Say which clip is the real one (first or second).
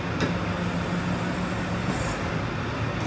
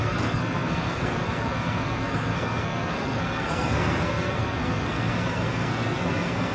first